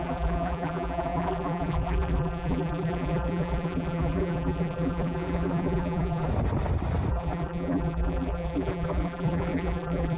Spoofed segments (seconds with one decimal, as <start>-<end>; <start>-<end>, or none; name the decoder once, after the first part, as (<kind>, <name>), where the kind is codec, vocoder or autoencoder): 0.0-6.3 (vocoder, BigVGAN v2); 7.1-10.2